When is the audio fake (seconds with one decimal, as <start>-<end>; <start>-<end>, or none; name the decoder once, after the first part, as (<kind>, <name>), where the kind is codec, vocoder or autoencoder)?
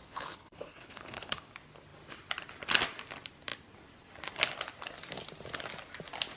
0.0-1.5 (codec, HILCodec)